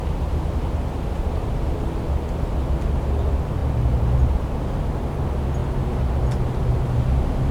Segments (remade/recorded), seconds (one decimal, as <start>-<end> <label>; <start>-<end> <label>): 0.0-7.5 recorded